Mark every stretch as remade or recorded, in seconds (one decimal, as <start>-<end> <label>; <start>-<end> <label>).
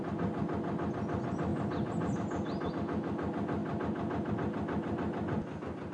0.0-1.5 recorded; 1.5-2.7 remade; 2.7-5.9 recorded